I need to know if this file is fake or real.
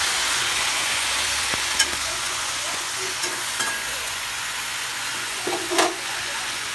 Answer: fake